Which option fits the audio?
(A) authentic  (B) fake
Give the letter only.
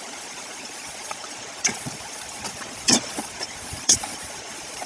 B